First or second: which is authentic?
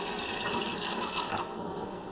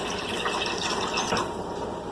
second